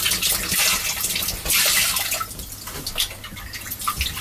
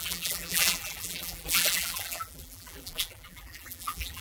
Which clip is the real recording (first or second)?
first